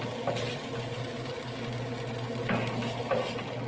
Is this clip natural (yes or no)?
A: yes